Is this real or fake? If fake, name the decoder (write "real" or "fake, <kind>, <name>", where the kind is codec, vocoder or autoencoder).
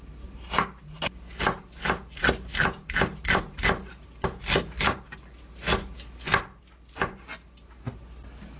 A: real